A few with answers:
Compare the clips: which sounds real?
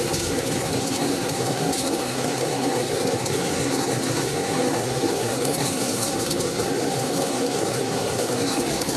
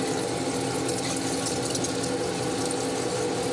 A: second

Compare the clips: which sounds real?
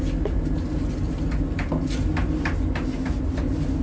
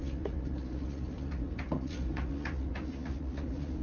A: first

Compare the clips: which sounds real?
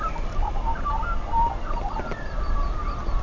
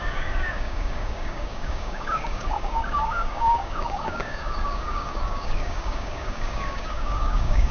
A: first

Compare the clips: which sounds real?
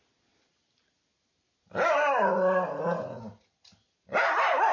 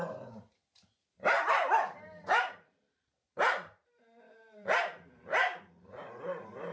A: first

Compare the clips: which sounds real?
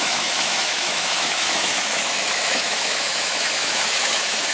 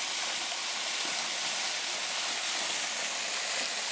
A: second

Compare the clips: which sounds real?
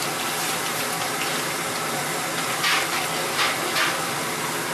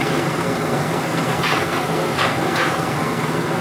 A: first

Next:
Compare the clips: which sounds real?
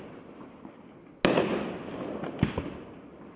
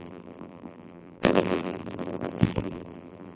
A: first